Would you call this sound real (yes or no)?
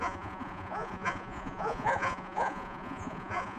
no